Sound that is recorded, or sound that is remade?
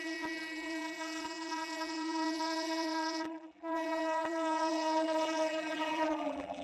remade